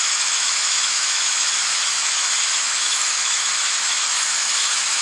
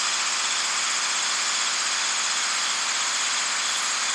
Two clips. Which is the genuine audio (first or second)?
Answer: second